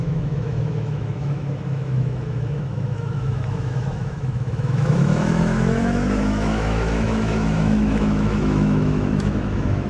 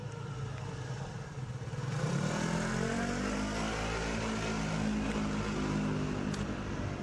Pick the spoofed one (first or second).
first